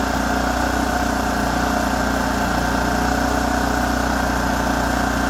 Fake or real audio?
real